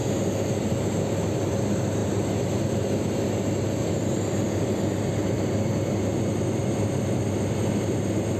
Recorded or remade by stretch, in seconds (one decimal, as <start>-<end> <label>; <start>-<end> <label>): 0.0-8.4 recorded